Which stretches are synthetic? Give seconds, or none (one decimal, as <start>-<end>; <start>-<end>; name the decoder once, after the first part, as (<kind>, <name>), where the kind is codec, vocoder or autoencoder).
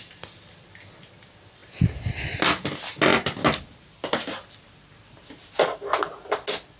none